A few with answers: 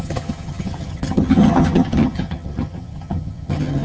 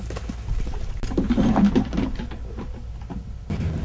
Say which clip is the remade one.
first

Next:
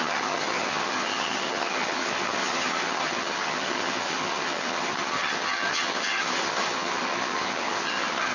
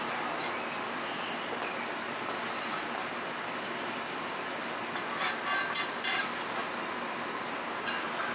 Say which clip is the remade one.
first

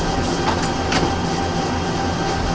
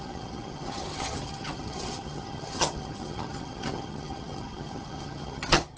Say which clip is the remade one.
second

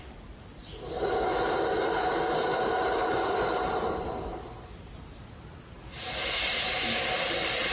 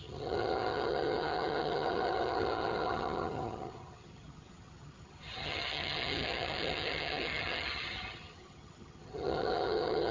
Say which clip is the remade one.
second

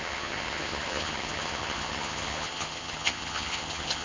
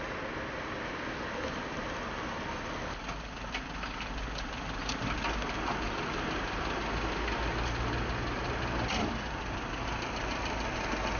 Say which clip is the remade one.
first